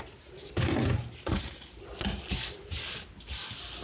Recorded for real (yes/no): yes